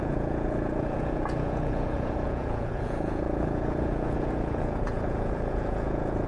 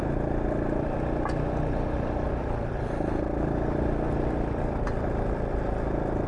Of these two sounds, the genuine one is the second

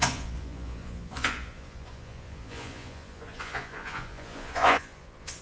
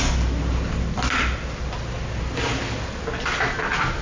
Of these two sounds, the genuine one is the second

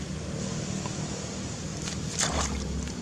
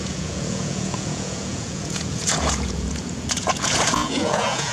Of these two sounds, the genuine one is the first